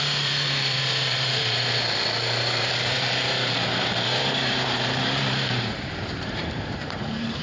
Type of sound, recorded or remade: remade